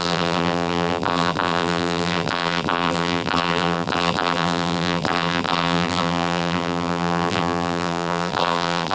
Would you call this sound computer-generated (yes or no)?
yes